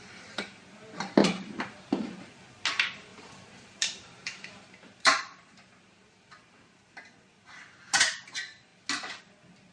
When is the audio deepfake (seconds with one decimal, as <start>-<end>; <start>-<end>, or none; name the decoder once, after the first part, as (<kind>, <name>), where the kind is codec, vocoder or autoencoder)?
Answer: 1.2-1.7 (vocoder, BigVGAN v2); 3.1-6.8